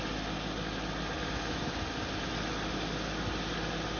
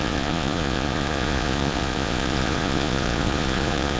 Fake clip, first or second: second